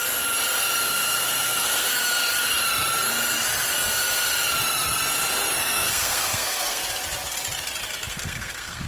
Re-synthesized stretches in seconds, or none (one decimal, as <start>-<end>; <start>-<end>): 0.8-1.9; 5.6-6.8; 8.1-8.9